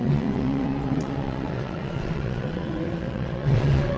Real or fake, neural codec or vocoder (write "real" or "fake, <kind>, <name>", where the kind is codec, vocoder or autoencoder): fake, vocoder, WaveNeXt